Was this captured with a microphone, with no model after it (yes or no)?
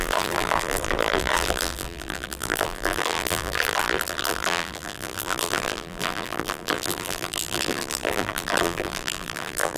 no